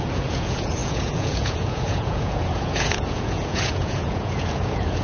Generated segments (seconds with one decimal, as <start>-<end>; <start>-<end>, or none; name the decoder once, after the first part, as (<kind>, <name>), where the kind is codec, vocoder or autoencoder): 0.0-5.0 (vocoder, Vocos)